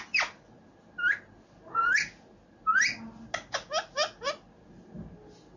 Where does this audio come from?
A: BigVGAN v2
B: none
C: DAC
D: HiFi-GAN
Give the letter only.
B